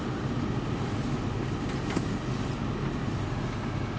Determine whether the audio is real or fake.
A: real